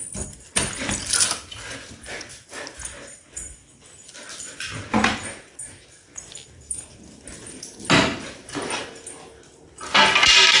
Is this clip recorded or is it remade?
recorded